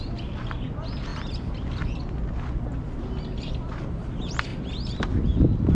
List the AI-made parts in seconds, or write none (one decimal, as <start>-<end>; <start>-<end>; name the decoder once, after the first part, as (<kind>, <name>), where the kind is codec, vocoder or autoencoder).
none

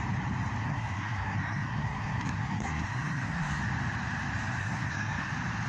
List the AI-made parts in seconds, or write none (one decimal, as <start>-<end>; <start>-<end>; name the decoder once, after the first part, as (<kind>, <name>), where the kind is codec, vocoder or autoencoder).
0.6-3.6 (codec, SNAC); 4.6-5.3